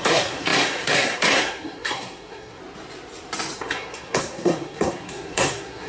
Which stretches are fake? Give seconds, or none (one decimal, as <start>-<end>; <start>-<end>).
0.0-2.6; 3.6-5.9